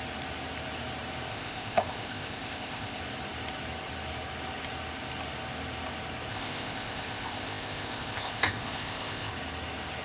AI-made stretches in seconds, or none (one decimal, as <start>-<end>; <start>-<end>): 1.3-3.0; 6.3-9.3